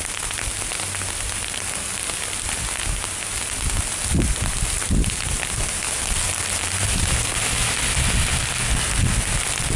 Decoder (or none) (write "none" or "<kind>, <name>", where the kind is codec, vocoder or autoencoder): none